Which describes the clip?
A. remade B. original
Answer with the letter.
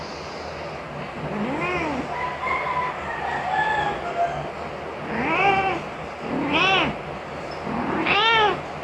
B